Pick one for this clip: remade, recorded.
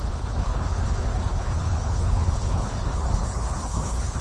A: remade